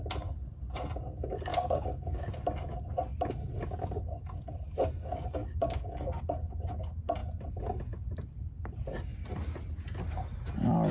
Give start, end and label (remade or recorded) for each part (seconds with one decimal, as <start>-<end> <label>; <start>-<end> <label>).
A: 0.0-1.5 recorded; 1.5-2.2 remade; 2.2-5.4 recorded; 5.4-6.2 remade; 6.2-10.9 recorded